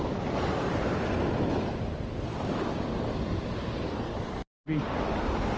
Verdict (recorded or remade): recorded